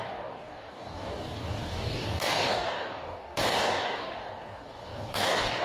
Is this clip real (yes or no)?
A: no